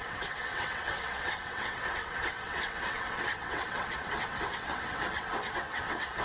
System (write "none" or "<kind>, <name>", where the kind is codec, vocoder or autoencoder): vocoder, WaveNeXt